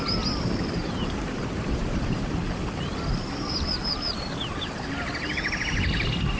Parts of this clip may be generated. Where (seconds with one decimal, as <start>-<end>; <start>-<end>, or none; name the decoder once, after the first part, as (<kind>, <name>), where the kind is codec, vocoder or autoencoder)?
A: 0.8-2.4 (vocoder, BigVGAN v2)